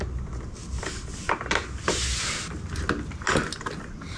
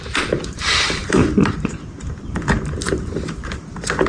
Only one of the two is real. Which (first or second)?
first